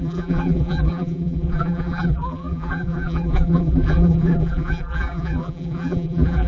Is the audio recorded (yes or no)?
no